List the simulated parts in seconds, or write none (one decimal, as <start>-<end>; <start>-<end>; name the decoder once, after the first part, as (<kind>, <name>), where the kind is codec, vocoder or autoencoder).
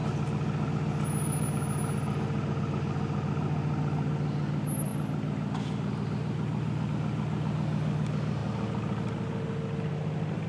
none